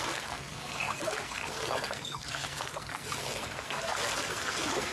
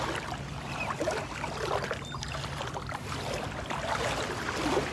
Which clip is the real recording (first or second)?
second